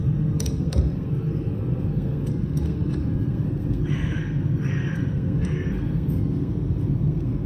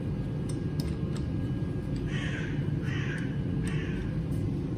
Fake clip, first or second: first